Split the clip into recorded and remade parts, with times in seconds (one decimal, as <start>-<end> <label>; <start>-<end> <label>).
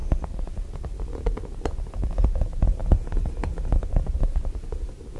0.0-5.2 recorded